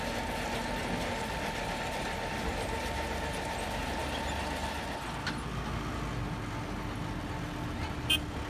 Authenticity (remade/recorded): recorded